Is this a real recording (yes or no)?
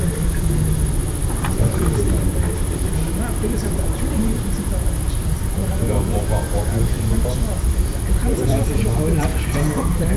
no